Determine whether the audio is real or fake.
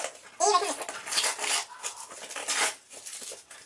real